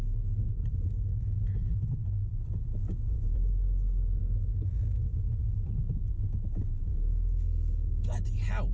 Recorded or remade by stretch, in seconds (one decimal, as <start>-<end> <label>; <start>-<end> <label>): 0.0-0.4 recorded; 0.4-0.9 remade; 0.9-2.0 recorded; 2.0-4.2 remade; 4.2-5.1 recorded; 5.1-6.7 remade; 6.7-8.7 recorded